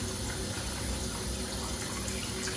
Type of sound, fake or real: real